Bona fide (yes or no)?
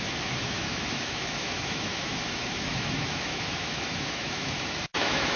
no